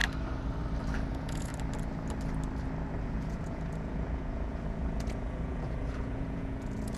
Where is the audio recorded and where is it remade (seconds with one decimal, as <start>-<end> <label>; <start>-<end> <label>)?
0.0-1.1 recorded; 1.1-1.5 remade; 1.5-2.9 recorded; 2.9-7.0 remade